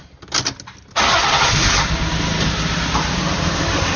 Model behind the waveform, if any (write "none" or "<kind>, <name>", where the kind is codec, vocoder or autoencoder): none